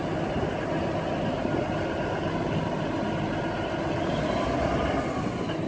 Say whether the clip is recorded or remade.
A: recorded